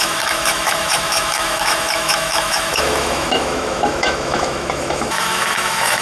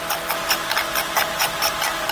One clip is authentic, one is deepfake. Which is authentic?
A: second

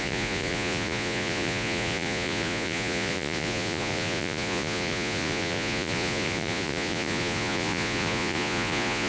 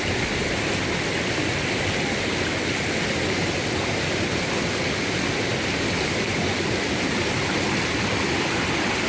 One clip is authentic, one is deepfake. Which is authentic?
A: second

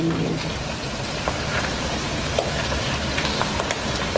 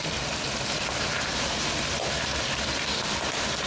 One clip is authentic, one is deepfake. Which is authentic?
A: second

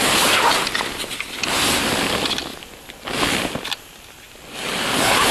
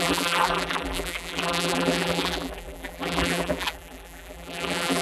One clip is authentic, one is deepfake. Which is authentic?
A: first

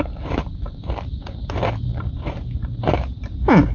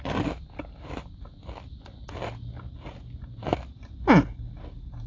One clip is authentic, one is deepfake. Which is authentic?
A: second